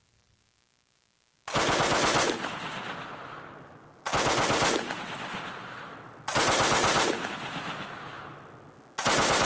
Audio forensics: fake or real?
real